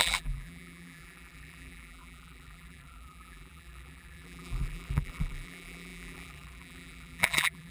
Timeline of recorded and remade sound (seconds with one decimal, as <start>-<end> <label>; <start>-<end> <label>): 0.0-7.7 remade